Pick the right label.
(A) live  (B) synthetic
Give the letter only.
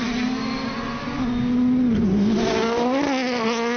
A